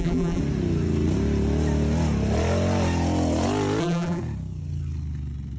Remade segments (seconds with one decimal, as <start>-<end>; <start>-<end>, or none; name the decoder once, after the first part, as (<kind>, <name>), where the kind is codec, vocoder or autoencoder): 0.0-0.4 (vocoder, BigVGAN v2); 3.8-4.2